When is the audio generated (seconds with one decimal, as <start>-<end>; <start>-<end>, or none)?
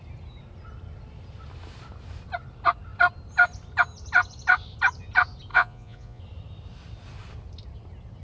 5.5-6.2